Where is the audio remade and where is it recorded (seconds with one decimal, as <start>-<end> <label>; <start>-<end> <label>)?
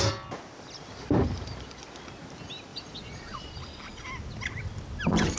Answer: 0.0-2.7 recorded; 2.7-3.5 remade; 3.5-5.4 recorded